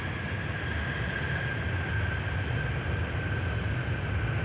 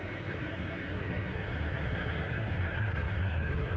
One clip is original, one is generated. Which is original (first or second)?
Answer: first